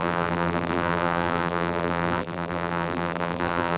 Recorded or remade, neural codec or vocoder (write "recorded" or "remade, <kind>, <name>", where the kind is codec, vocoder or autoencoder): remade, vocoder, BigVGAN v2